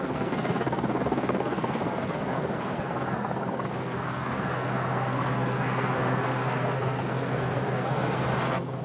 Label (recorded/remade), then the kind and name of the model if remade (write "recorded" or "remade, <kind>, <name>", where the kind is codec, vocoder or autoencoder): remade, codec, SNAC